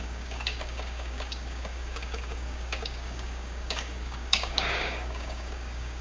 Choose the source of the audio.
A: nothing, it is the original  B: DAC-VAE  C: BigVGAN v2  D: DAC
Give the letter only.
D